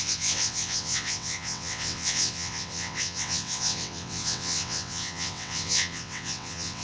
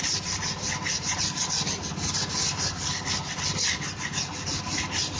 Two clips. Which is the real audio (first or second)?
second